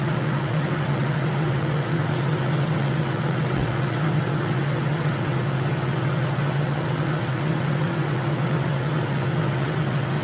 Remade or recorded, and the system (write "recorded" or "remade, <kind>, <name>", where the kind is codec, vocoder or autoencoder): remade, vocoder, WaveNeXt